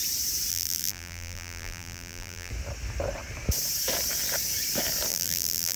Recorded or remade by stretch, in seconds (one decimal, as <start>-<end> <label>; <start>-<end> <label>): 0.0-0.5 recorded; 0.5-2.5 remade; 2.5-5.1 recorded; 5.1-5.8 remade